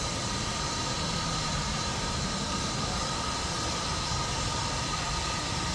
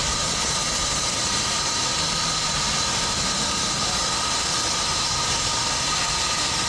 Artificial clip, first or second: first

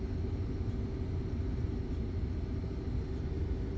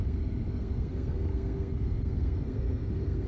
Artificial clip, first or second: second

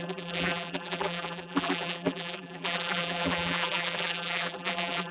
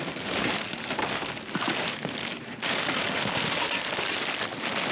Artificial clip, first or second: first